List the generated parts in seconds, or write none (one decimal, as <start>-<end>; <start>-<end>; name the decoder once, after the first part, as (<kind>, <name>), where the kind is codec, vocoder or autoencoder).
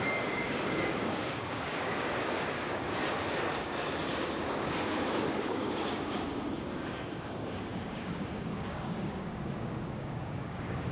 0.0-3.0 (codec, DAC); 3.6-10.9